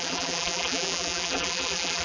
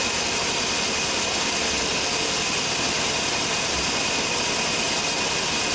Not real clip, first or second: first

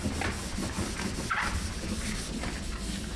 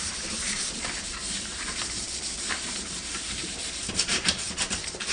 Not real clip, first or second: second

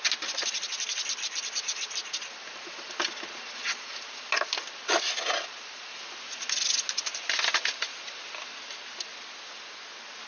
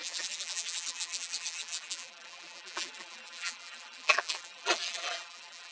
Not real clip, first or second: second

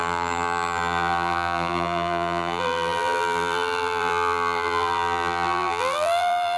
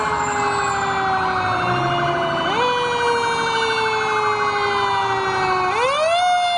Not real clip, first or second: first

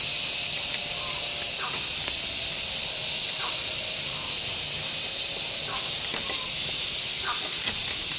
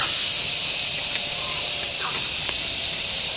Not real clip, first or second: second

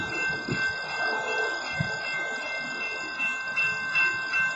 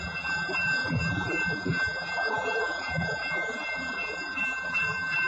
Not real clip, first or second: second